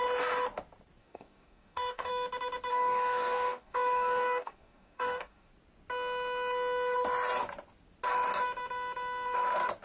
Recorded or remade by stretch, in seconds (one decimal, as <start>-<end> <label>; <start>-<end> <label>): 0.0-1.0 recorded; 1.0-2.1 remade; 2.1-2.7 recorded; 2.7-5.5 remade; 5.5-9.8 recorded